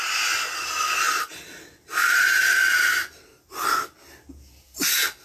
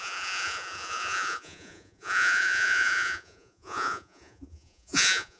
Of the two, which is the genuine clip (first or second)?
first